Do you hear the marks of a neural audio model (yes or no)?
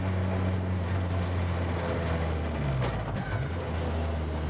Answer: no